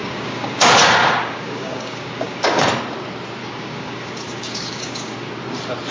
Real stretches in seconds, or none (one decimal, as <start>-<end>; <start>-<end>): 0.6-1.0; 2.6-3.4; 5.3-5.9